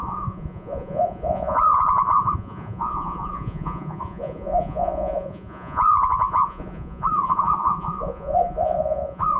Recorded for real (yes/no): no